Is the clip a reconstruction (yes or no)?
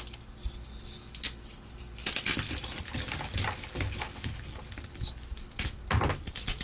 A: no